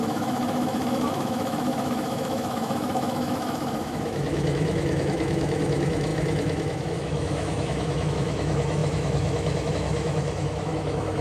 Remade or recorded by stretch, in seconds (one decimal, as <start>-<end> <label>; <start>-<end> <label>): 0.0-11.2 remade